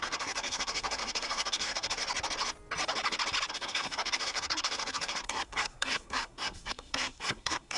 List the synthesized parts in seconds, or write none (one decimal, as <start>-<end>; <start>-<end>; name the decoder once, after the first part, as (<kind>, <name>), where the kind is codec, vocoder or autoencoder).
0.0-2.0 (codec, SNAC); 3.5-7.8